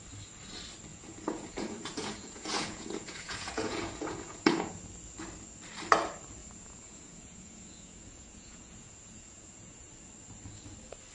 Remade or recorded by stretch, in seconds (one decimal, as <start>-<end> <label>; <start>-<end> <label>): 0.0-0.9 recorded; 0.9-4.8 remade; 4.8-6.4 recorded; 6.4-9.9 remade; 9.9-11.1 recorded